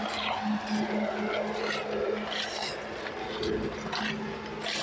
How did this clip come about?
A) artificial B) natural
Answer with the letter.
B